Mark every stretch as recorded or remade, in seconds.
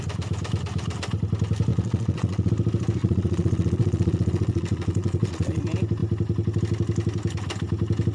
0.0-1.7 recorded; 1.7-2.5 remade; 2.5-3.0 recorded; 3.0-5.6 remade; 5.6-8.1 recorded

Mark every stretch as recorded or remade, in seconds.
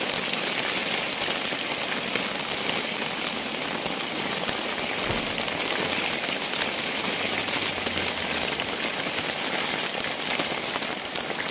0.0-11.5 recorded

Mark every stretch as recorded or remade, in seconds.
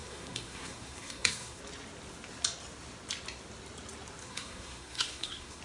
0.0-1.6 remade; 1.6-4.2 recorded; 4.2-5.6 remade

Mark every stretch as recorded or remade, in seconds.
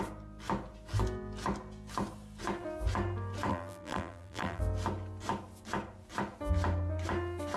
0.0-3.5 recorded; 3.5-4.6 remade; 4.6-7.6 recorded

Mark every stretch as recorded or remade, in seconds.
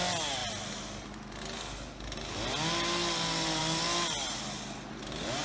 0.0-5.4 recorded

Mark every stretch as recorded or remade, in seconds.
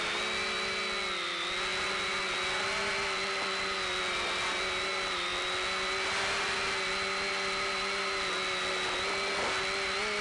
0.0-10.2 recorded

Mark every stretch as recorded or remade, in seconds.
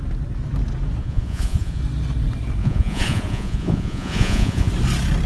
0.0-1.0 recorded; 1.0-1.8 remade; 1.8-2.6 recorded; 2.6-4.7 remade; 4.7-5.3 recorded